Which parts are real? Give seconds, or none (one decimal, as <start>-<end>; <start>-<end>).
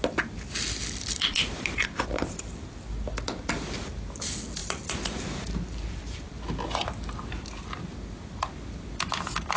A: 0.0-0.8; 2.9-4.6; 6.3-9.6